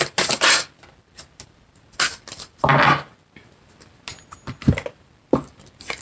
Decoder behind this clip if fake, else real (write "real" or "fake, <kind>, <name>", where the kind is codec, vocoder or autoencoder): real